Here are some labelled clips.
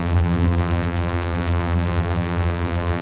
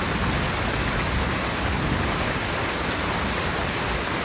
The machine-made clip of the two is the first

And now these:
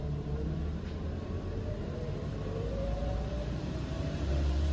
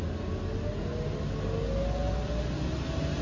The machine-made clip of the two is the first